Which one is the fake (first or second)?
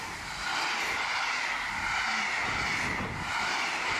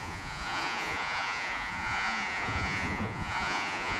second